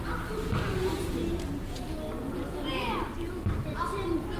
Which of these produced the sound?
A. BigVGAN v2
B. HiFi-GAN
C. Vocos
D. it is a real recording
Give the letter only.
D